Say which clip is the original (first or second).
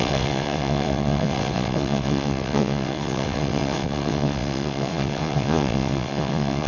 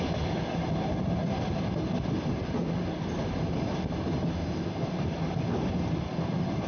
second